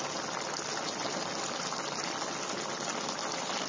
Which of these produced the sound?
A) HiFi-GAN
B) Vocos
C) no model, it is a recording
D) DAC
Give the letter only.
C